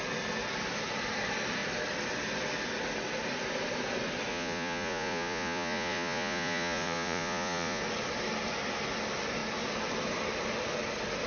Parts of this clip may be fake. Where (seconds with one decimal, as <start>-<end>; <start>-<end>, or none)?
4.3-7.8